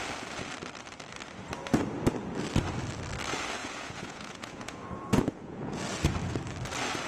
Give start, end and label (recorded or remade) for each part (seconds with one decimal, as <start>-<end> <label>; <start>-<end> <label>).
0.0-3.6 recorded; 3.6-5.8 remade; 5.8-7.1 recorded